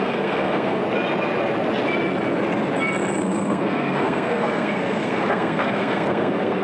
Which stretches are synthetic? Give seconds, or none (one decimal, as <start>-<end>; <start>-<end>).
0.0-0.8; 3.2-6.6